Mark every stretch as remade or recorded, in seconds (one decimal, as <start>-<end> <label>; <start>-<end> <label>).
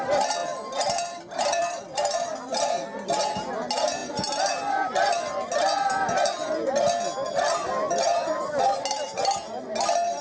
0.0-0.4 recorded; 0.4-2.6 remade; 2.6-10.2 recorded